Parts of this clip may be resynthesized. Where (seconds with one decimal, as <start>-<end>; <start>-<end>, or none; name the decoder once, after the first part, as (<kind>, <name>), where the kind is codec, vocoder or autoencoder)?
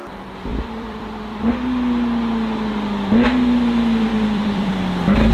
0.5-1.4 (vocoder, BigVGAN v2); 4.1-4.7